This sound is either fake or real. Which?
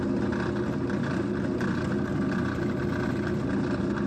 real